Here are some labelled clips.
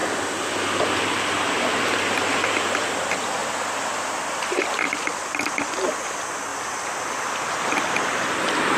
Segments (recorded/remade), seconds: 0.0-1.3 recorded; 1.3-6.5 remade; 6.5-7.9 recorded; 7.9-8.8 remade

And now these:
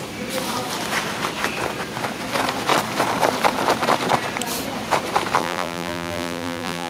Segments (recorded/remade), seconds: 0.0-5.4 recorded; 5.4-6.9 remade

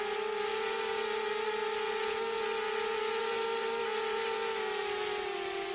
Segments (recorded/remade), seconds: 0.0-5.7 remade

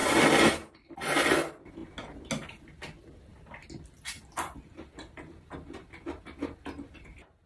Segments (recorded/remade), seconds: 0.0-7.5 recorded

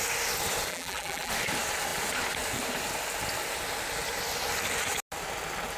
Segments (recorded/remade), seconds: 0.0-0.7 recorded; 0.7-1.3 remade; 1.3-5.8 recorded

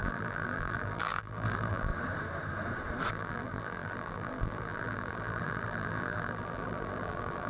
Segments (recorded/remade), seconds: 0.0-1.9 remade; 1.9-3.1 recorded; 3.1-7.5 remade

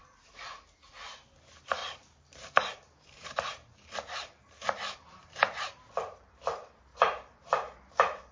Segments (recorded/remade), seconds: 0.0-0.9 remade; 0.9-1.8 recorded; 1.8-6.3 remade; 6.3-6.9 recorded; 6.9-8.3 remade